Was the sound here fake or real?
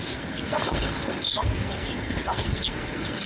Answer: fake